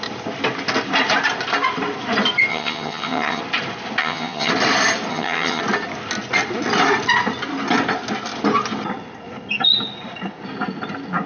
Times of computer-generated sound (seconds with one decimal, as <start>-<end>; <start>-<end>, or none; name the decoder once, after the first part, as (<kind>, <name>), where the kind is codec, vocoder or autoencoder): 2.5-3.4 (vocoder, HiFi-GAN); 4.0-4.5; 5.1-5.6